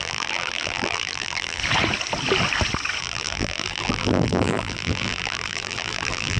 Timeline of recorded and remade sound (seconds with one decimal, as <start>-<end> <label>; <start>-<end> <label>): 0.0-1.6 remade; 1.6-3.0 recorded; 3.0-6.4 remade